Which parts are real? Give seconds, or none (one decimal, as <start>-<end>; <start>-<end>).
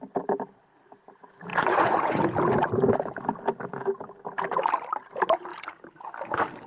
0.0-1.5; 2.2-6.7